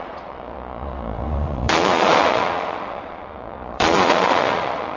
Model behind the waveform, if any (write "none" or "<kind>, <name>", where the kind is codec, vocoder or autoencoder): vocoder, Vocos